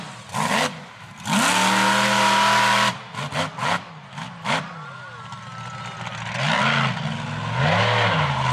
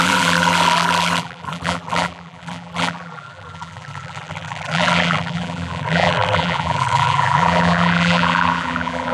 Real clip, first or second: first